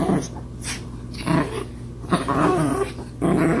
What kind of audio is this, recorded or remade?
recorded